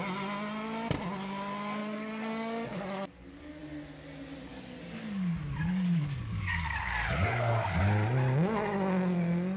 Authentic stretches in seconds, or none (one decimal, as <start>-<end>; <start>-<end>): 0.0-1.8; 3.6-4.5; 7.8-9.6